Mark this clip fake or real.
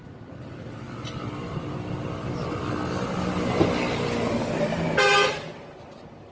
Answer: real